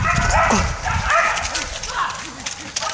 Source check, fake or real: real